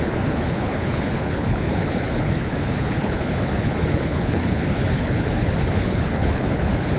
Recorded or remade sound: remade